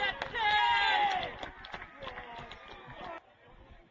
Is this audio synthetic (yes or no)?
no